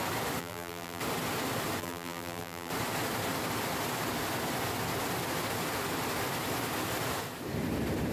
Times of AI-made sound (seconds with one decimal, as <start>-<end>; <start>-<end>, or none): 0.4-1.0; 1.8-2.7